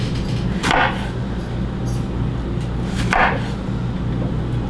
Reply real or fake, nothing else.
real